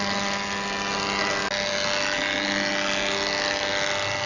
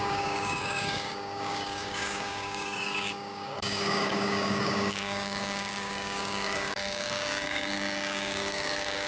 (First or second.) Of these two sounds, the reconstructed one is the second